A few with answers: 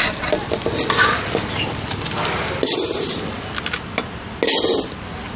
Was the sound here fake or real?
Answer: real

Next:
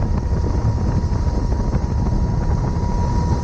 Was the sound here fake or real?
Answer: real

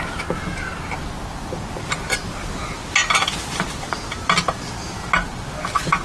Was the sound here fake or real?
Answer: real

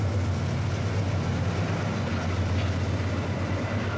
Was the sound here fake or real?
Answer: real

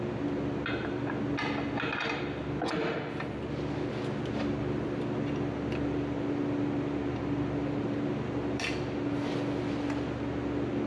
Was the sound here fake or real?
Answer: real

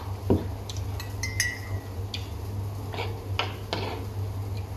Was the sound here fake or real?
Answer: real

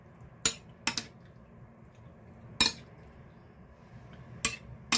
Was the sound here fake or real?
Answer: real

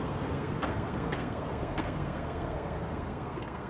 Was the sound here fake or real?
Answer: fake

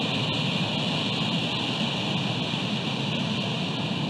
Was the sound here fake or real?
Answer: real